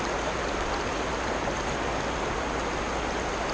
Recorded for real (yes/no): yes